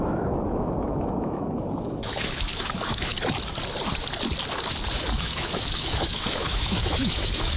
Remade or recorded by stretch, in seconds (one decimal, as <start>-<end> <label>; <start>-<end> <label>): 0.0-3.1 remade; 3.1-4.9 recorded; 4.9-7.6 remade